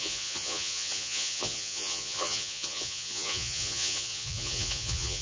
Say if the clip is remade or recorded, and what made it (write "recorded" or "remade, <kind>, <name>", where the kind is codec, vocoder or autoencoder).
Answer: remade, vocoder, Vocos